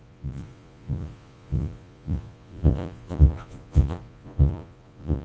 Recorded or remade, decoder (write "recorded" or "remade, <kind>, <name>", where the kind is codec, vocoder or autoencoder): remade, vocoder, Vocos